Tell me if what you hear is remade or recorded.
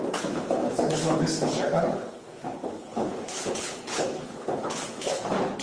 remade